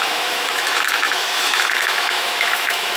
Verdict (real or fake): fake